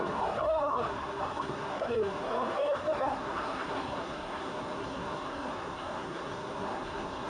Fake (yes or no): yes